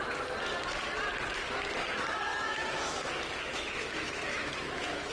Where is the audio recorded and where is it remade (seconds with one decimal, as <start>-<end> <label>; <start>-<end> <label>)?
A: 0.0-2.3 recorded; 2.3-5.1 remade